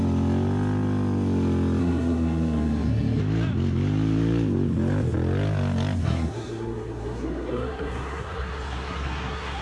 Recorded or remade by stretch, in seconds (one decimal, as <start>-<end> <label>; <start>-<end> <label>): 0.0-1.8 recorded; 1.8-3.2 remade; 3.2-6.0 recorded; 6.0-9.6 remade